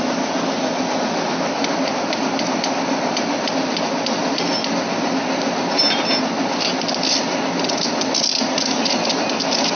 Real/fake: real